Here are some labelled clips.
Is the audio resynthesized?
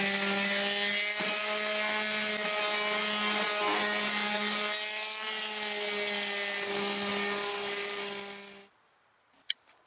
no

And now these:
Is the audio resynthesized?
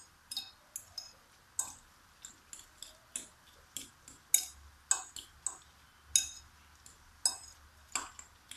no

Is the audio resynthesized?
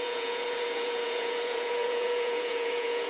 yes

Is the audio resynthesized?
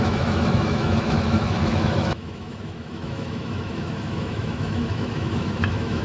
yes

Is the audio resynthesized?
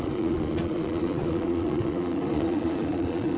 yes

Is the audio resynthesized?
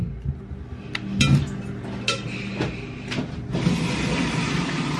no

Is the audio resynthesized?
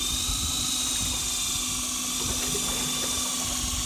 no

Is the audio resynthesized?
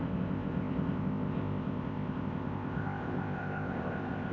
yes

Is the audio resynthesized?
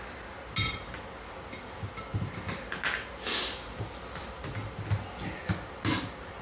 no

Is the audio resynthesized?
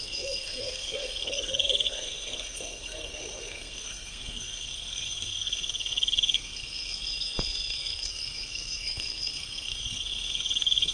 yes